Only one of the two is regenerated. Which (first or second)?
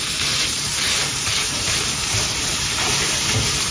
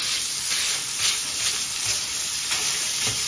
first